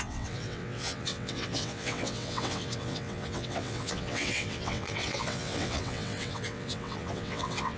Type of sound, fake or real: fake